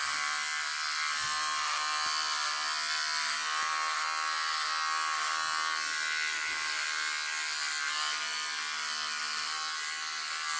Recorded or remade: recorded